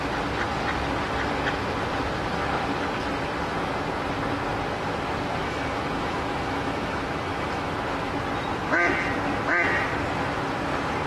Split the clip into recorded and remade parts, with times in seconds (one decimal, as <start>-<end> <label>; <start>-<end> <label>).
0.0-5.4 recorded; 5.4-7.7 remade; 7.7-11.1 recorded